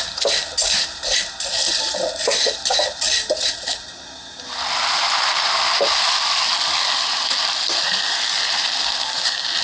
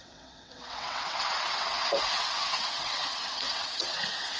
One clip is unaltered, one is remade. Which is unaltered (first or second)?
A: first